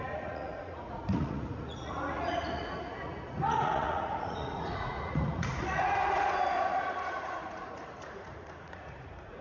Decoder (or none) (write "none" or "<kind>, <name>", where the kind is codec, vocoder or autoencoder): vocoder, Vocos